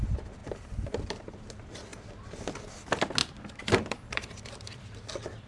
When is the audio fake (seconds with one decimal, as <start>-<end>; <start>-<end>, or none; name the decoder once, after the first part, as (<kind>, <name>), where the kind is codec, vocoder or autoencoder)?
0.4-1.3 (vocoder, BigVGAN v2); 3.2-5.5